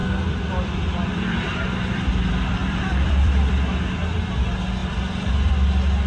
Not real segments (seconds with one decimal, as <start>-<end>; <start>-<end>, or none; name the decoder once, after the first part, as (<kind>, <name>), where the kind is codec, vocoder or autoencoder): 0.0-2.1 (vocoder, BigVGAN v2); 2.6-3.5; 4.8-5.5